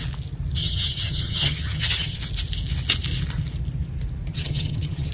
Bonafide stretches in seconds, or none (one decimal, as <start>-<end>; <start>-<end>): 0.0-0.6; 2.2-4.3